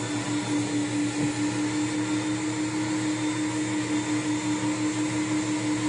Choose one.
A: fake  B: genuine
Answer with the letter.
B